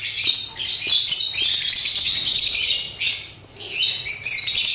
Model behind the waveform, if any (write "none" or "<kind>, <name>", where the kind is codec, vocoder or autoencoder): none